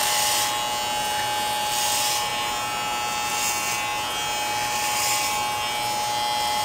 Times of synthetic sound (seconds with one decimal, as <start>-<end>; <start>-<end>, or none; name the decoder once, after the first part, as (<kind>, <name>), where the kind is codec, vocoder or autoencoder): none